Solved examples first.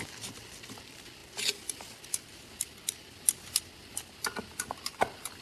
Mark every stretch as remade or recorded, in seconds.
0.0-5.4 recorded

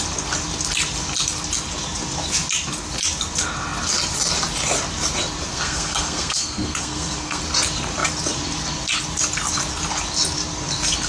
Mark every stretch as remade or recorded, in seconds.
0.0-5.5 recorded; 5.5-7.4 remade; 7.4-11.1 recorded

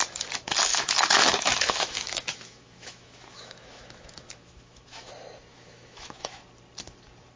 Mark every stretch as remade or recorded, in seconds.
0.0-0.7 recorded; 0.7-5.1 remade; 5.1-5.5 recorded; 5.5-6.4 remade; 6.4-7.4 recorded